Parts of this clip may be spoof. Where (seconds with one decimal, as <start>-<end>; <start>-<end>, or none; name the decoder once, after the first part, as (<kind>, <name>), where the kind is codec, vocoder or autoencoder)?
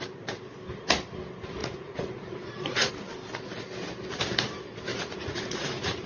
1.6-2.9 (vocoder, Vocos); 4.9-6.1